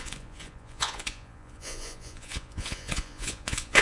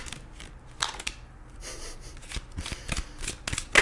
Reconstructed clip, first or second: first